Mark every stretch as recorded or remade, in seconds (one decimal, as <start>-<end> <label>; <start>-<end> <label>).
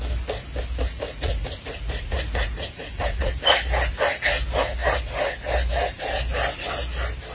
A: 0.0-0.9 recorded; 0.9-3.3 remade; 3.3-7.3 recorded